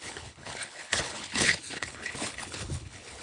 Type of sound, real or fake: fake